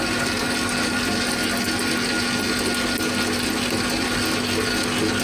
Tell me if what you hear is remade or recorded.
recorded